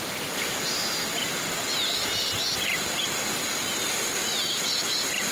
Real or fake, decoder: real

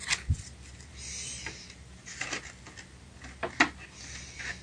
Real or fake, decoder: real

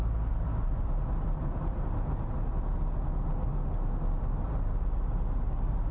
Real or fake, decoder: real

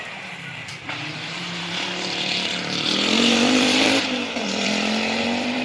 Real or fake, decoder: fake, vocoder, BigVGAN v2